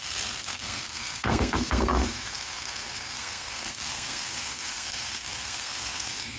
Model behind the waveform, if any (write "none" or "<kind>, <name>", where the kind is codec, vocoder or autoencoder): codec, SNAC